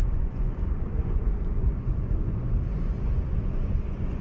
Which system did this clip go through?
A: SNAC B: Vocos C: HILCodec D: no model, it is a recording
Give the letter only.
B